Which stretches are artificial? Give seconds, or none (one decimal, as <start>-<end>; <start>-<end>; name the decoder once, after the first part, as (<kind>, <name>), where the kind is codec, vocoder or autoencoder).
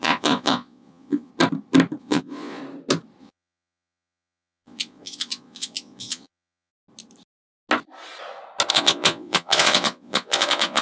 0.0-1.3 (vocoder, Vocos); 2.0-2.6; 3.2-6.7; 8.7-10.8